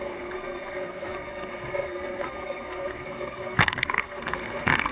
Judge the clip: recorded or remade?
remade